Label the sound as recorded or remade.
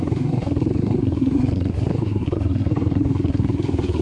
remade